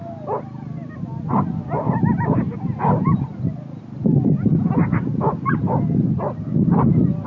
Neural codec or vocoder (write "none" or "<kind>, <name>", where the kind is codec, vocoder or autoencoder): none